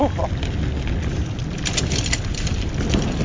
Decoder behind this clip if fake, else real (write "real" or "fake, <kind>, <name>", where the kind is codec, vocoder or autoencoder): real